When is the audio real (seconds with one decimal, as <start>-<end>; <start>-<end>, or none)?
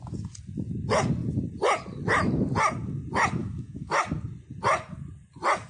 0.0-3.4; 4.0-5.7